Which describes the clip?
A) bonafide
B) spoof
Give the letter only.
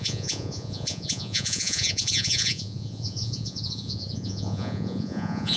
B